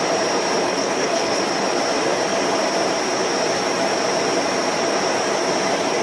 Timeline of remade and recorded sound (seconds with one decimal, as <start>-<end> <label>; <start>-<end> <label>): 0.0-0.6 recorded; 0.6-1.4 remade; 1.4-6.0 recorded